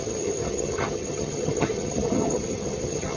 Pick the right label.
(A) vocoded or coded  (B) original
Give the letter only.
A